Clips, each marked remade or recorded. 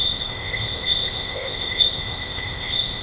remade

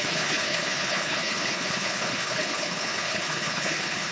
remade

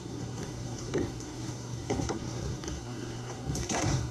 remade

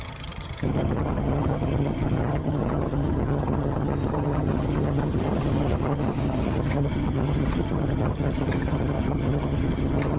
remade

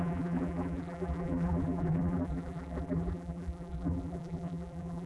remade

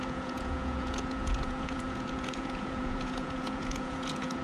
remade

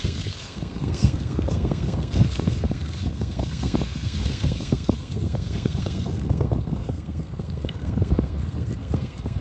remade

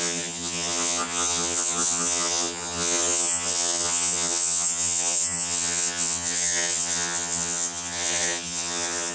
remade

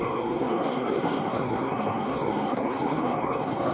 remade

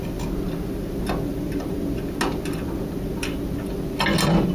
recorded